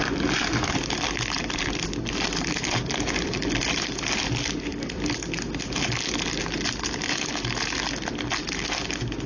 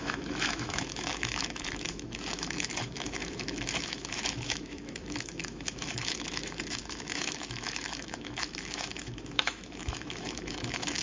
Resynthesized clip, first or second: second